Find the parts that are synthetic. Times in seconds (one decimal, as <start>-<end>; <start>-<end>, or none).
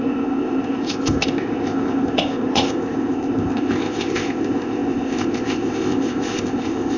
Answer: 0.0-7.0